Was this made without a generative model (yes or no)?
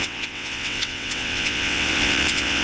no